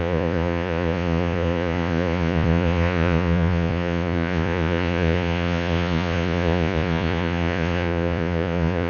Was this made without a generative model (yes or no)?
no